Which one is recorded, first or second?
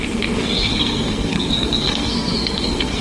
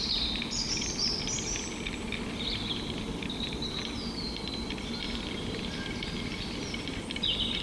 second